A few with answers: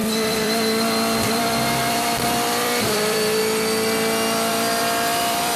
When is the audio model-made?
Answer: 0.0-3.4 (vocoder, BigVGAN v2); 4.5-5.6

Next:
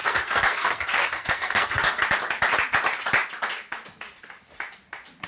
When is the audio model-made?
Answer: 0.0-2.0 (codec, SNAC)

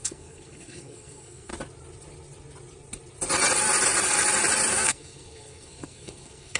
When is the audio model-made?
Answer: 0.0-1.5 (codec, SNAC); 4.7-6.6

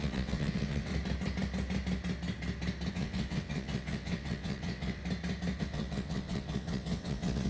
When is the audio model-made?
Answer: 0.0-0.9 (vocoder, WaveNeXt); 2.9-5.0; 5.6-7.5

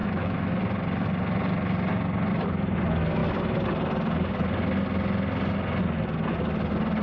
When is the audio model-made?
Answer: 0.0-0.6 (autoencoder, DAC-VAE)

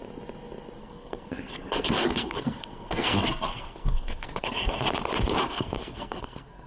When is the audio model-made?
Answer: 0.8-4.8 (codec, SNAC); 5.4-6.7

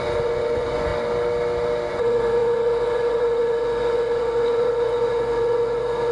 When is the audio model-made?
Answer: 0.0-0.9 (vocoder, Vocos); 1.9-6.1